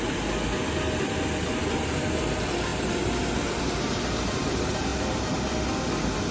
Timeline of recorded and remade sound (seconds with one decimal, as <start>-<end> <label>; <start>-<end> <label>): 0.0-1.5 recorded; 1.5-2.2 remade; 2.2-2.7 recorded; 2.7-3.6 remade; 3.6-4.9 recorded; 4.9-5.6 remade; 5.6-6.3 recorded

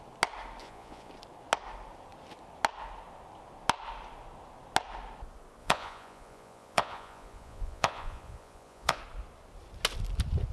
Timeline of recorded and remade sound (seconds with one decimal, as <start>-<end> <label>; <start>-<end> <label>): 0.0-0.6 recorded; 0.6-1.1 remade; 1.1-5.6 recorded; 5.6-9.0 remade; 9.0-10.5 recorded

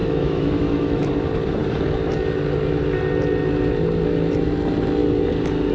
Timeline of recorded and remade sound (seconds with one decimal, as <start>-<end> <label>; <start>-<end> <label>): 0.0-1.1 remade; 1.1-5.7 recorded

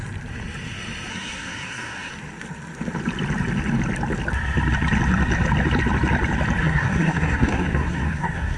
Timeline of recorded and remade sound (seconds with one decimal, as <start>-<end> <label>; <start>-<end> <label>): 0.0-1.1 recorded; 1.1-2.1 remade; 2.1-6.6 recorded; 6.6-8.6 remade

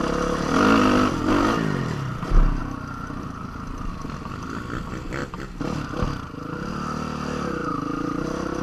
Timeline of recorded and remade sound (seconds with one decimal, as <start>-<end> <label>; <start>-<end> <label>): 0.0-8.6 recorded

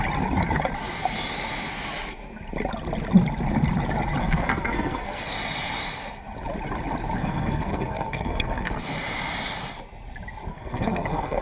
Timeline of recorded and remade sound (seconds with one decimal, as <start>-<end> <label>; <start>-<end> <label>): 0.0-4.2 recorded; 4.2-5.2 remade; 5.2-7.2 recorded; 7.2-8.8 remade; 8.8-10.5 recorded; 10.5-11.4 remade

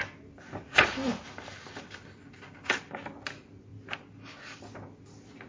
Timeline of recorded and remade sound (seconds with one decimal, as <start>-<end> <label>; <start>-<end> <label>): 0.0-1.0 recorded; 1.0-1.9 remade; 1.9-5.5 recorded

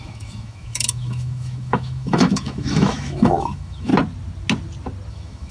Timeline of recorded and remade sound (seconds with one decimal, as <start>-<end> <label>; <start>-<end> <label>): 0.0-3.9 remade; 3.9-5.1 recorded; 5.1-5.5 remade